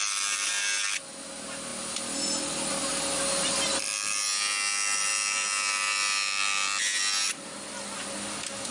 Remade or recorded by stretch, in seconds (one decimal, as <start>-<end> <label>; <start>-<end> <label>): 0.0-8.7 recorded